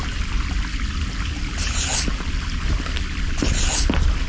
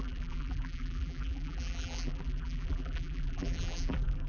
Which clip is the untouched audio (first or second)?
first